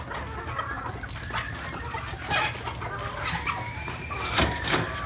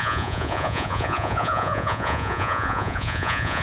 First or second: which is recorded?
first